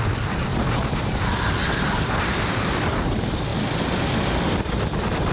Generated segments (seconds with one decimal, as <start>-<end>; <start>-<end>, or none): none